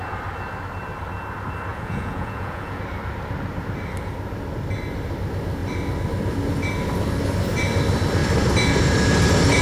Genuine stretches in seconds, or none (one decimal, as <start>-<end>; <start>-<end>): 0.0-1.7; 2.8-9.6